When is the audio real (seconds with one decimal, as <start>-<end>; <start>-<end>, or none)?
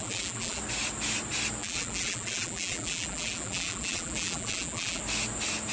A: 0.6-1.6; 5.0-5.7